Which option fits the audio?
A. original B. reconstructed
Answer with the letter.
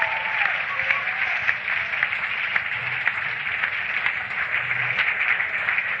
A